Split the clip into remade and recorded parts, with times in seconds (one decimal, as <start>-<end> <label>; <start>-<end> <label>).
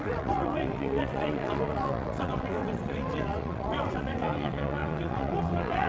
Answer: 0.0-5.9 remade